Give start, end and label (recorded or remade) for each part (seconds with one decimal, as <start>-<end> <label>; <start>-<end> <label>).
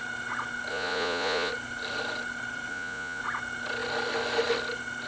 0.0-0.7 recorded; 0.7-1.5 remade; 1.5-2.7 recorded; 2.7-3.2 remade; 3.2-5.1 recorded